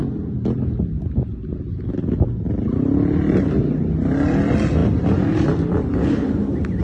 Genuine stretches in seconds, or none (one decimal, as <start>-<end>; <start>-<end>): 0.0-6.8